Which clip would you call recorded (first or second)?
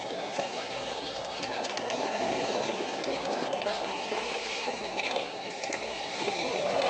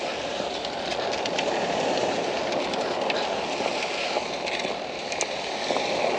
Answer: second